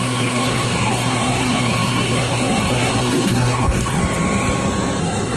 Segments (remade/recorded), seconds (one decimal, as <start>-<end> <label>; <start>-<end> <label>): 0.0-4.0 remade; 4.0-5.0 recorded; 5.0-5.4 remade